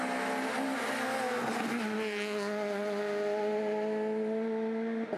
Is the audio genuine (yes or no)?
yes